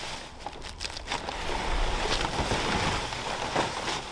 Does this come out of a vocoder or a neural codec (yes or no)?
no